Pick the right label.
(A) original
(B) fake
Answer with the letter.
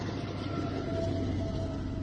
A